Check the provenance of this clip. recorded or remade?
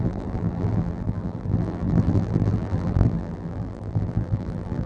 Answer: remade